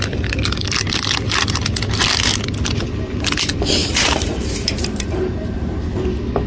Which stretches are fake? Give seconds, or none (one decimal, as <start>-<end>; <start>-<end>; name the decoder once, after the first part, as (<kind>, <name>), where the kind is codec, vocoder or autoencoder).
3.8-5.9 (vocoder, BigVGAN v2)